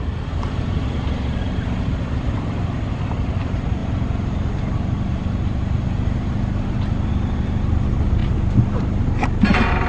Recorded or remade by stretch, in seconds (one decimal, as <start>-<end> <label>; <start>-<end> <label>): 0.0-3.8 remade; 3.8-4.5 recorded; 4.5-9.9 remade

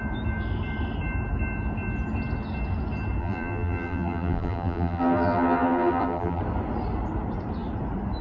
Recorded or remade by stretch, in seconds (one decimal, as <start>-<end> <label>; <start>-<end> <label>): 0.0-3.2 recorded; 3.2-6.4 remade; 6.4-8.2 recorded

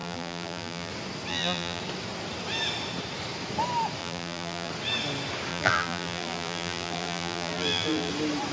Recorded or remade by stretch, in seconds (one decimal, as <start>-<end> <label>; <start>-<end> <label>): 0.0-0.9 remade; 0.9-1.3 recorded; 1.3-1.8 remade; 1.8-4.0 recorded; 4.0-4.7 remade; 4.7-5.5 recorded; 5.5-8.1 remade; 8.1-8.5 recorded

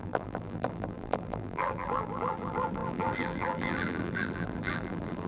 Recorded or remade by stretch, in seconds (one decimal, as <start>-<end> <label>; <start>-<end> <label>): 0.0-5.3 remade

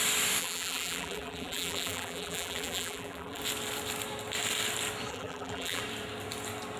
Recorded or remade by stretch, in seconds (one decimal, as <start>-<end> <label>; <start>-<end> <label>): 0.0-0.4 recorded; 0.4-3.4 remade; 3.4-5.1 recorded; 5.1-5.8 remade; 5.8-6.8 recorded